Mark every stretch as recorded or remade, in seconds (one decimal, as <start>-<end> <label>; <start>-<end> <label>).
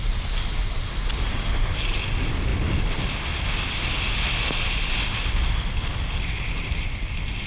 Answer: 0.0-7.5 recorded